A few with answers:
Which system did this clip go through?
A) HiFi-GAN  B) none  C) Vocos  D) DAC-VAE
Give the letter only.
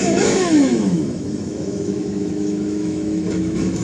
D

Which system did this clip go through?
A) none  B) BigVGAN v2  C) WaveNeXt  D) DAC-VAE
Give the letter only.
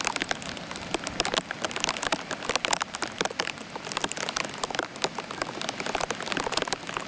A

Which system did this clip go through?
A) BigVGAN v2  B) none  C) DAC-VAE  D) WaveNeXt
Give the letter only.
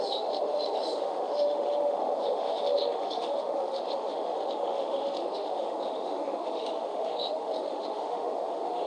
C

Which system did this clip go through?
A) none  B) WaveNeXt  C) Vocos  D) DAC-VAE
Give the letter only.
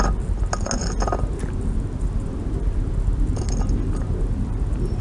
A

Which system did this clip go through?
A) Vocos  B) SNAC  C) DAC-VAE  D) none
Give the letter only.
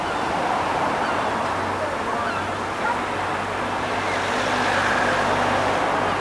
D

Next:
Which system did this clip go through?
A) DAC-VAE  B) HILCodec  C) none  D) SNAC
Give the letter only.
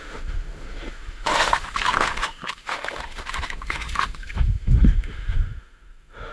A